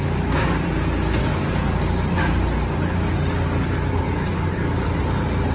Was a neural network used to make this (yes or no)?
no